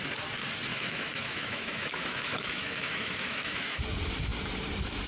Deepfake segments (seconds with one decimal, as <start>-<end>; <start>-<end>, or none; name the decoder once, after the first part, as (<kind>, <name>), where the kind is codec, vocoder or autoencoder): 0.7-3.8 (autoencoder, DAC-VAE)